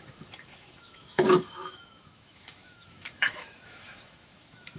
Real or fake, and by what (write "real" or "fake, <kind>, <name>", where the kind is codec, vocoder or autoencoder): fake, autoencoder, DAC-VAE